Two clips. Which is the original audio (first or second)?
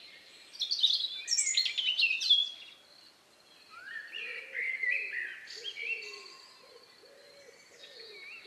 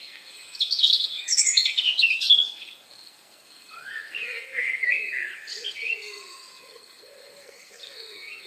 first